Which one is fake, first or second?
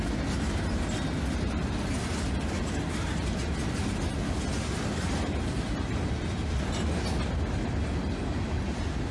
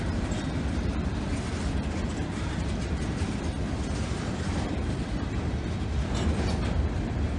second